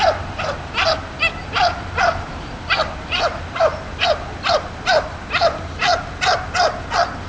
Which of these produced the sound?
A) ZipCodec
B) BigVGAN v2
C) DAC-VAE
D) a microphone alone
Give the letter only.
D